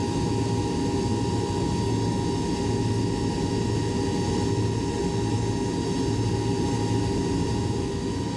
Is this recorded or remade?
recorded